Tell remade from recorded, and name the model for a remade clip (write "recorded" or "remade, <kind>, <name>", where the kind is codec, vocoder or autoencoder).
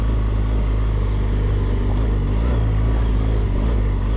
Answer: recorded